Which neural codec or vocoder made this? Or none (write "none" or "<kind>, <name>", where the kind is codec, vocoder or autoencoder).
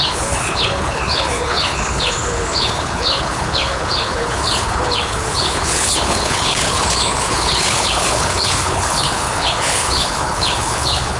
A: codec, HILCodec